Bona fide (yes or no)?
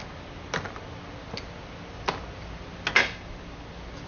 yes